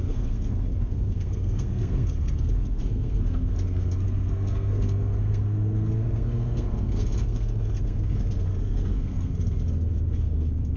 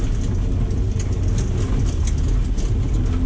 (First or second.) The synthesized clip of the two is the first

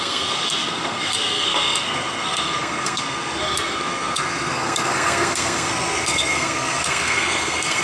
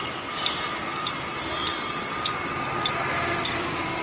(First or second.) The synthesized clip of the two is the first